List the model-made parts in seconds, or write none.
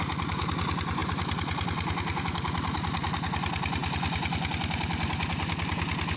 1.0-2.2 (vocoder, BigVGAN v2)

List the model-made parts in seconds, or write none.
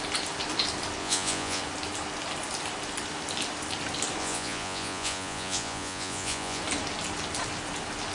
1.0-1.6 (vocoder, Vocos); 4.2-6.6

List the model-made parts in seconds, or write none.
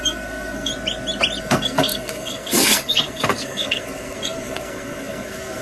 0.0-0.7 (codec, SNAC); 1.4-5.6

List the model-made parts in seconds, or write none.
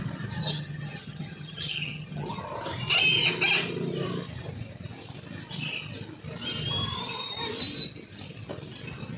0.4-2.4 (vocoder, HiFi-GAN)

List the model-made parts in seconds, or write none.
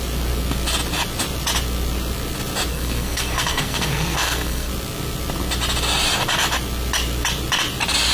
2.7-4.7 (codec, SNAC)